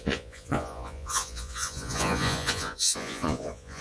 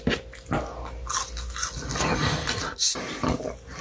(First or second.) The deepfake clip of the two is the first